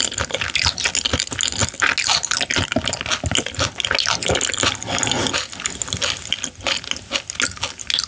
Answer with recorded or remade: recorded